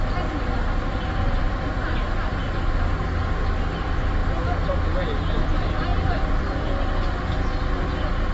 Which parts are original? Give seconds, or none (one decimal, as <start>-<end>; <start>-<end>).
0.0-1.4; 2.1-8.3